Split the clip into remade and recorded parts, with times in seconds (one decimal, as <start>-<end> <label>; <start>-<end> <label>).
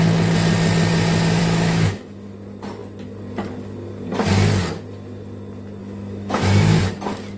0.0-1.4 recorded; 1.4-2.3 remade; 2.3-5.8 recorded; 5.8-6.8 remade; 6.8-7.4 recorded